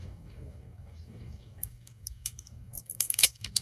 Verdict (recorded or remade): remade